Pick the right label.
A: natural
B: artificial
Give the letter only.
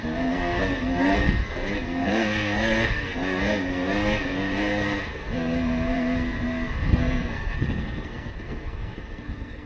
B